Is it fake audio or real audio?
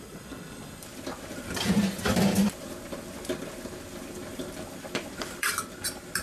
fake